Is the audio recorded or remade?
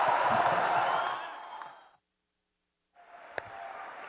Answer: remade